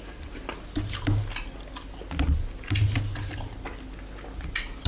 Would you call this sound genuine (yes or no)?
yes